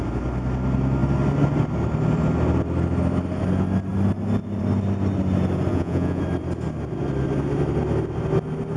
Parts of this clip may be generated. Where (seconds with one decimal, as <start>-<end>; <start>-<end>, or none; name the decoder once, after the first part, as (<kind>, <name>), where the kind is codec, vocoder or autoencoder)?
5.7-6.2 (vocoder, Vocos)